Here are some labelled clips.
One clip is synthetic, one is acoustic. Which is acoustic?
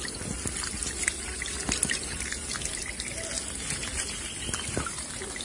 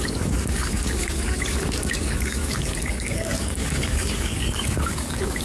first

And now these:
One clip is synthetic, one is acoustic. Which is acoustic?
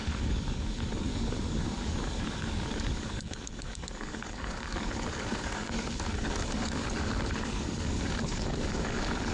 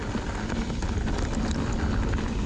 second